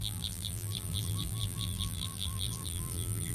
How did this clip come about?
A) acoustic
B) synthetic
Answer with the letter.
B